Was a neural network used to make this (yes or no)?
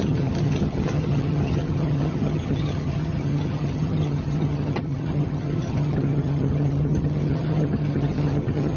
yes